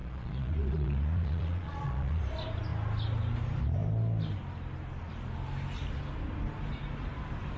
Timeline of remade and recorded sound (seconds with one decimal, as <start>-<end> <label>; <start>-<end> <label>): 0.0-2.2 remade; 2.2-7.6 recorded